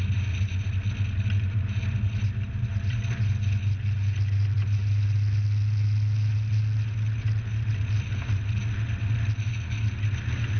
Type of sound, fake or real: real